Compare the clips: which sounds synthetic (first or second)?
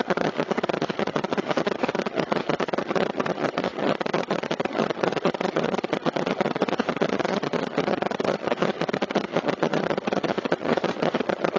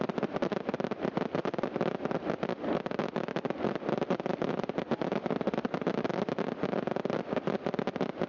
first